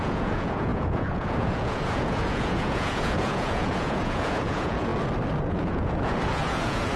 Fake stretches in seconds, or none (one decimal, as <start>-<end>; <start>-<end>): 0.0-4.9; 5.5-7.0

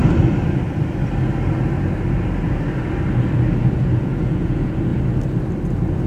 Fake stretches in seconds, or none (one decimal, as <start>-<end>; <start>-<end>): 3.7-4.9

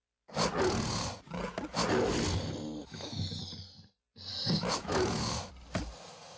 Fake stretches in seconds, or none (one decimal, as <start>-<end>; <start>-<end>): 2.8-3.4; 4.3-5.5

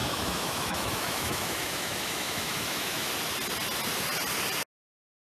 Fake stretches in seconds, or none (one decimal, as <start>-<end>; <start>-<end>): 0.0-3.1

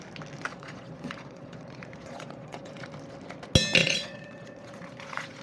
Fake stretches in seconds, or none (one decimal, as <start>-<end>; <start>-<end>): 0.5-2.9; 3.8-5.4

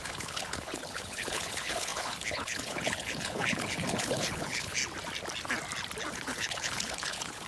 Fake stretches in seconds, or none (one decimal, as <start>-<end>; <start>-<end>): 0.0-4.8; 6.1-7.5

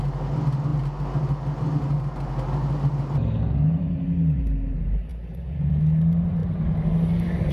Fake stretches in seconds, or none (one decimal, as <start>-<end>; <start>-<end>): 5.1-5.7